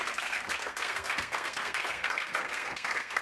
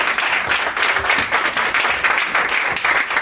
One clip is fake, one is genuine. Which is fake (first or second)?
first